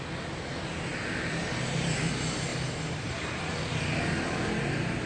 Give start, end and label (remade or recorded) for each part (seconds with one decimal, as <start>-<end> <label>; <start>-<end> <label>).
0.0-0.9 recorded; 0.9-2.1 remade; 2.1-2.5 recorded; 2.5-3.4 remade; 3.4-5.1 recorded